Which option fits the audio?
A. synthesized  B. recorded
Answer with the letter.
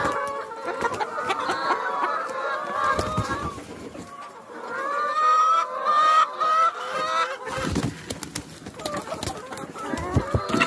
B